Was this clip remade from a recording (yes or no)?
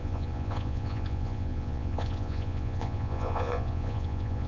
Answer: yes